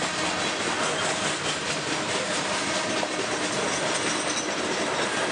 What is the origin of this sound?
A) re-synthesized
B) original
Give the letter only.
B